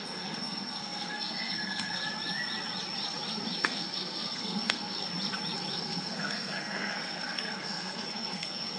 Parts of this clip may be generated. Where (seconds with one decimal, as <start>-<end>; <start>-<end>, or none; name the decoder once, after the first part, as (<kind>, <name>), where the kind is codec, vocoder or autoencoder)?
0.0-2.0 (codec, SNAC); 3.6-5.1; 5.7-8.8